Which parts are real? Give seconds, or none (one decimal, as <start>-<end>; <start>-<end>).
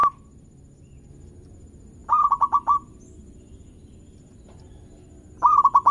0.0-5.9